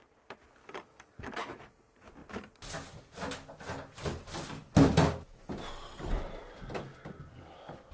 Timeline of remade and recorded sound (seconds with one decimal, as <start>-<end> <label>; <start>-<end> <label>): 0.0-0.6 recorded; 0.6-1.6 remade; 1.6-7.9 recorded